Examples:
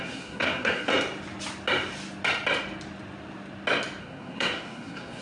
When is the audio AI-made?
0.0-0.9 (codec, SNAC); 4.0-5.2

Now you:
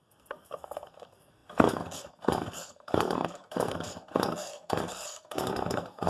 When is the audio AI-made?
0.0-6.1 (codec, SNAC)

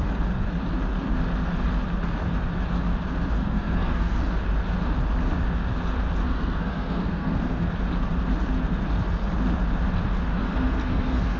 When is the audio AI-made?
3.4-4.2 (codec, SNAC); 6.2-7.7; 10.3-11.4

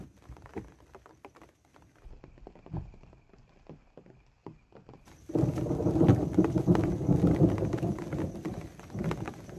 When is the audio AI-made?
none

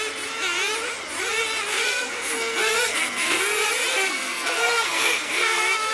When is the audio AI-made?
1.7-3.4 (codec, SNAC); 3.9-5.9

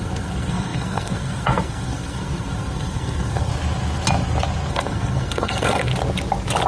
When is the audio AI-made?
0.0-3.5 (codec, SNAC); 4.7-5.9

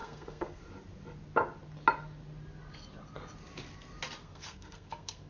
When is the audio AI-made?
0.0-0.6 (codec, SNAC); 4.2-5.3

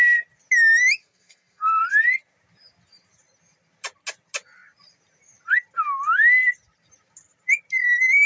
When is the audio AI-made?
1.0-1.8 (codec, SNAC)